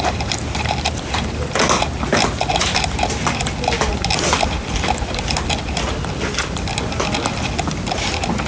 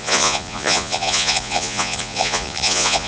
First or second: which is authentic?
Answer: first